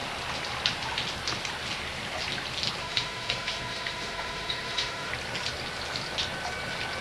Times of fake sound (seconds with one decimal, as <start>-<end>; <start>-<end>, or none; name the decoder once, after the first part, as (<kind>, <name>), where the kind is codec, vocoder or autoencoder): 2.8-5.1 (autoencoder, DAC-VAE)